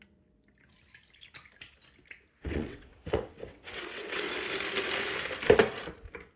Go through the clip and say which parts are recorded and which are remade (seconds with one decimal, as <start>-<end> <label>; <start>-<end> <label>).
0.0-2.4 recorded; 2.4-4.3 remade; 4.3-6.4 recorded